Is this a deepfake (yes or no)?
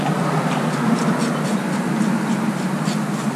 no